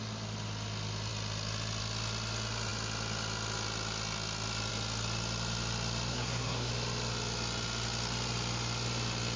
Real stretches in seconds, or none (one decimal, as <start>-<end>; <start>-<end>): 0.0-6.1; 6.7-9.4